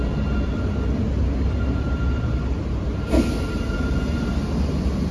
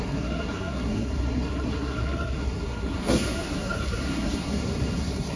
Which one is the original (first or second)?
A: first